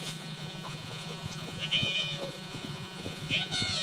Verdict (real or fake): fake